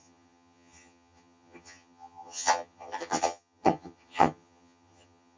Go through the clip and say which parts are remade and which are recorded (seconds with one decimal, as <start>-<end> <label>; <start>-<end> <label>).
0.0-5.4 remade